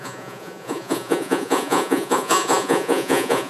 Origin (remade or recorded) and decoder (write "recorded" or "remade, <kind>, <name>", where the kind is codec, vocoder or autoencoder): remade, vocoder, Vocos